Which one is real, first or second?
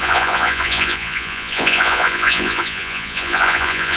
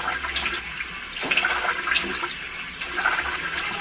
second